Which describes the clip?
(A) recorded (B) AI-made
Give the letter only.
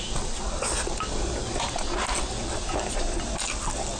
A